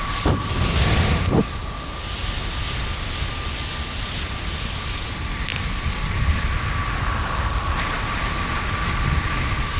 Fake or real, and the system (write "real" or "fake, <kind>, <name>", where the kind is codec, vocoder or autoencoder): real